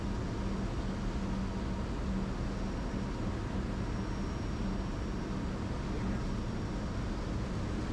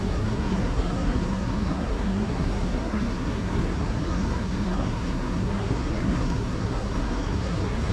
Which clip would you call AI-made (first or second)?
second